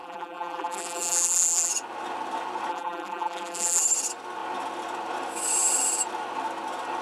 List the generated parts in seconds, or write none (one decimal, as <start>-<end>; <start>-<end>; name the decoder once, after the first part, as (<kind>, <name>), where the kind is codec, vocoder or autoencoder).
0.0-1.7 (vocoder, BigVGAN v2); 2.7-3.8